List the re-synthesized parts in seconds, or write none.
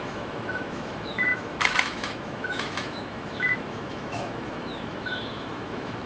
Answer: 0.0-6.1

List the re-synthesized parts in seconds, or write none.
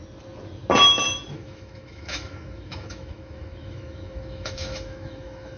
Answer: 1.3-5.6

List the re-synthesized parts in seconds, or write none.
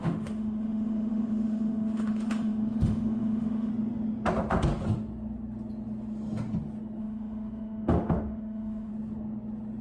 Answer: 0.0-3.7; 7.0-8.9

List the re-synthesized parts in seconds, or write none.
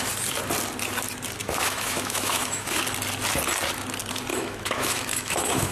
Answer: 1.4-2.8; 4.3-5.7